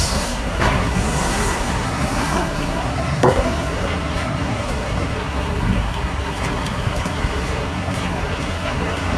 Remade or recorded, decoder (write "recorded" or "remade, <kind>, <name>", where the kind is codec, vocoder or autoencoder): remade, codec, SNAC